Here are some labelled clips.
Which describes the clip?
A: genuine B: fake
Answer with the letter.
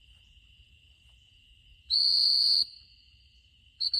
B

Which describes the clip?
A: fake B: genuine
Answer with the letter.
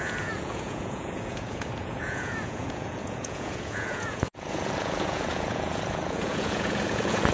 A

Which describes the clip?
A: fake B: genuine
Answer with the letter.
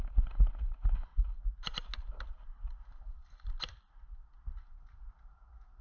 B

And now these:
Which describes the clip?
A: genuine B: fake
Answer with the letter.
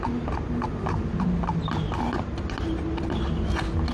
A